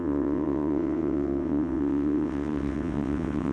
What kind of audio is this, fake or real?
fake